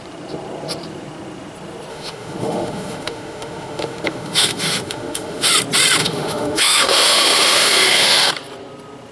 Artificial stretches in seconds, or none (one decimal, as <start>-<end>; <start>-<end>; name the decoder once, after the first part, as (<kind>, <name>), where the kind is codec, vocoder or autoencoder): 1.9-5.5 (autoencoder, DAC-VAE); 6.0-8.3